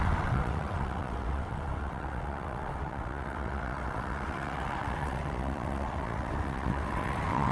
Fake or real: fake